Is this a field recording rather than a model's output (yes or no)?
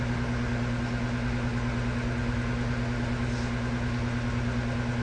yes